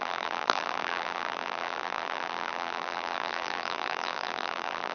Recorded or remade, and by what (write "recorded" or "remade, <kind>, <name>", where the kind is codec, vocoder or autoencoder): remade, vocoder, BigVGAN v2